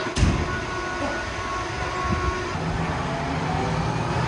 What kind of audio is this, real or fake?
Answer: real